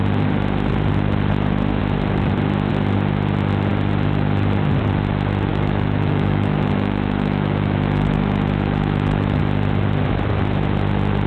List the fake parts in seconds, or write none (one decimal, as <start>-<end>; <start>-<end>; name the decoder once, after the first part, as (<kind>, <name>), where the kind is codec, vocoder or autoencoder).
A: 5.5-9.4 (autoencoder, DAC-VAE)